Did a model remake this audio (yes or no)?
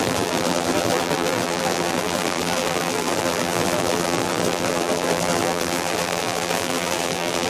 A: yes